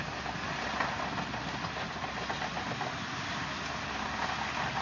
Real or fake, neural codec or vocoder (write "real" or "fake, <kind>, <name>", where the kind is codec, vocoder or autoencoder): real